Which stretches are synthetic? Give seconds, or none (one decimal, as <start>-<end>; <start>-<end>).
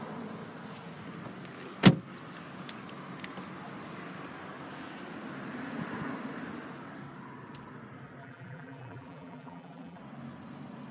8.2-10.0